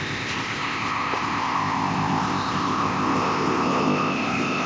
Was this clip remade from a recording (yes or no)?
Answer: yes